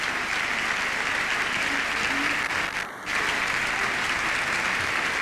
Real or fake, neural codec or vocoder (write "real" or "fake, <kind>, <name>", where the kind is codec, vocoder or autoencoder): real